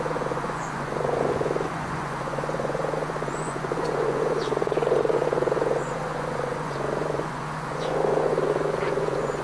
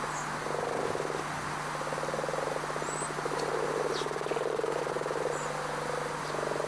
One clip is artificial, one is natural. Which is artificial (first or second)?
first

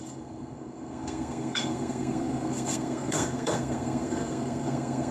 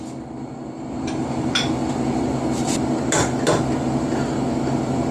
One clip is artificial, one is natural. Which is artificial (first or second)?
first